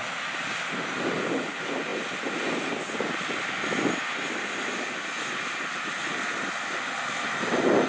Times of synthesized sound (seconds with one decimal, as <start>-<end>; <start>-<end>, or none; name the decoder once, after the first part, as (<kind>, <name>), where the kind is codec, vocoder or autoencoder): none

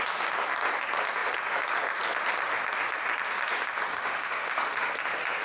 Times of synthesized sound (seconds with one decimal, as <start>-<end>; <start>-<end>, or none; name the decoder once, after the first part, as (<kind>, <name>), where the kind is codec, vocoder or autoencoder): 3.9-4.9 (autoencoder, DAC-VAE)